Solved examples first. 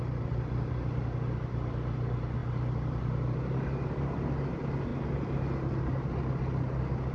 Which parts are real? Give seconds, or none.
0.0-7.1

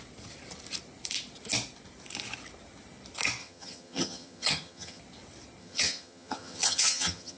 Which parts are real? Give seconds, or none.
0.0-3.4; 5.0-5.6